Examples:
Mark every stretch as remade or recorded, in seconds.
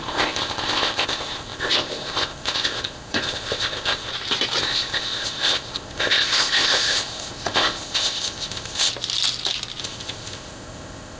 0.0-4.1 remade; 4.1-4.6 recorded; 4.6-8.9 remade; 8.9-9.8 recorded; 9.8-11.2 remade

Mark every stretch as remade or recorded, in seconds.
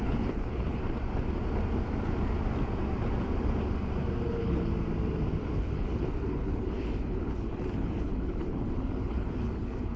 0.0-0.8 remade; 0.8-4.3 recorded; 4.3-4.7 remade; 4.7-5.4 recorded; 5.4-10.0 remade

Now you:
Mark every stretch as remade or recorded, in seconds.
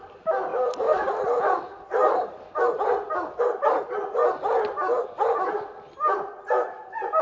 0.0-7.2 recorded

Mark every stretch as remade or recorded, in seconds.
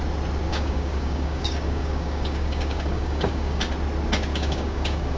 0.0-0.5 recorded; 0.5-3.6 remade; 3.6-4.3 recorded; 4.3-5.2 remade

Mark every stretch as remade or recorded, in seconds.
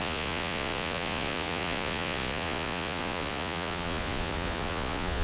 0.0-5.2 remade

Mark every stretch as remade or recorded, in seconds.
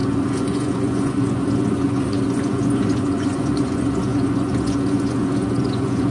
0.0-6.1 remade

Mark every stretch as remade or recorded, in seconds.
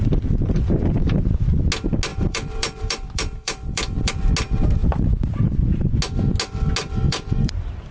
0.0-2.1 recorded; 2.1-4.1 remade; 4.1-4.8 recorded; 4.8-5.4 remade; 5.4-6.8 recorded; 6.8-7.5 remade; 7.5-7.9 recorded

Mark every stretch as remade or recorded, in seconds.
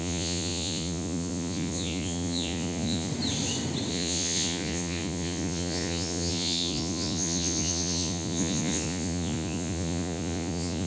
0.0-3.1 remade; 3.1-3.9 recorded; 3.9-10.9 remade